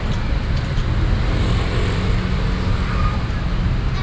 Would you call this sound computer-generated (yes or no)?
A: no